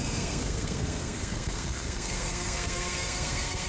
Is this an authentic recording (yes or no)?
no